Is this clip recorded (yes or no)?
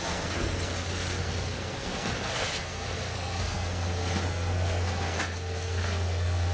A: no